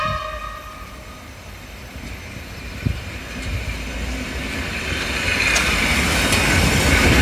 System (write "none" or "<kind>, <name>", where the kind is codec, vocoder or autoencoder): none